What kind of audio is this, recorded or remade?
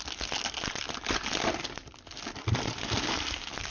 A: recorded